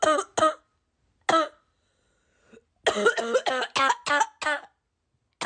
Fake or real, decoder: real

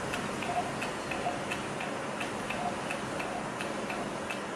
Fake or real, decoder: real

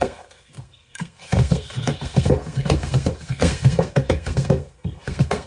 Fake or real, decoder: fake, codec, SNAC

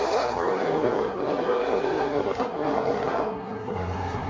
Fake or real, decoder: fake, codec, SNAC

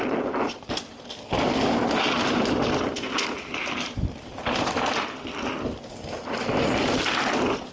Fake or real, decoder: real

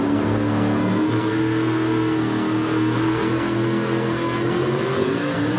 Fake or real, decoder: fake, codec, SNAC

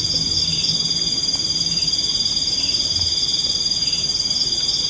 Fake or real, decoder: real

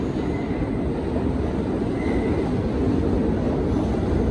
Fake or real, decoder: real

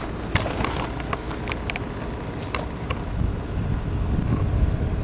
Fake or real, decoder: real